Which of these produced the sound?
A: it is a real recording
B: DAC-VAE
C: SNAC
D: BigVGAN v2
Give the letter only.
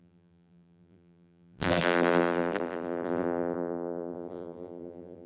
D